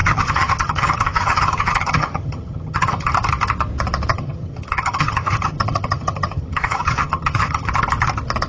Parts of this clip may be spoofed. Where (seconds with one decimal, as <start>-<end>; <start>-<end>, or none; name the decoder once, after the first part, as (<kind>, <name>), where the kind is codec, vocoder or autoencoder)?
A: 0.0-3.1 (vocoder, HiFi-GAN); 4.1-7.7